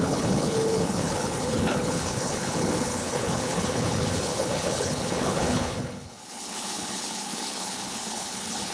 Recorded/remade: remade